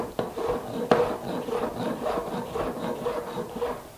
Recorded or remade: recorded